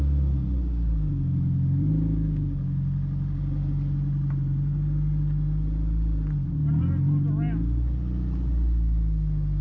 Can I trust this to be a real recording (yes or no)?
yes